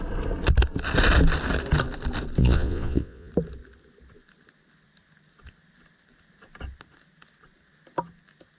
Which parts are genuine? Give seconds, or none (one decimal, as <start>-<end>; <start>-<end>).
0.0-2.4; 3.3-8.6